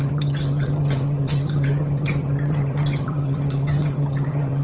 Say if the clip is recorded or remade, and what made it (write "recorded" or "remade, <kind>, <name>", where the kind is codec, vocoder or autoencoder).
remade, vocoder, HiFi-GAN